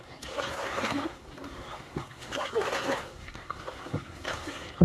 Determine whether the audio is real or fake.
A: fake